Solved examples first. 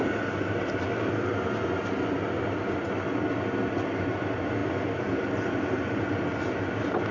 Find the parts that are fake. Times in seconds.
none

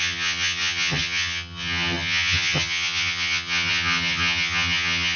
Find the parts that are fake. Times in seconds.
0.0-5.2 (vocoder, HiFi-GAN)

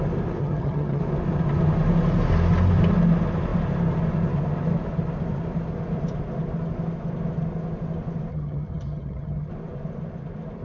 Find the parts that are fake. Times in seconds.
0.4-1.0 (vocoder, HiFi-GAN); 8.3-9.5